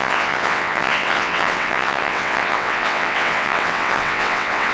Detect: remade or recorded remade